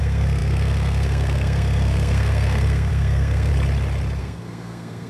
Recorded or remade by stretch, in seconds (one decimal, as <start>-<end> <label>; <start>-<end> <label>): 0.0-3.5 remade; 3.5-4.2 recorded; 4.2-5.1 remade